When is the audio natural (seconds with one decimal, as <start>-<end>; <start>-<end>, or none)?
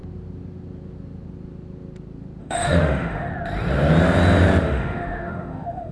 0.0-2.4; 3.3-4.6